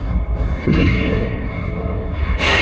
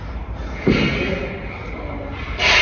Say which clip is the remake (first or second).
first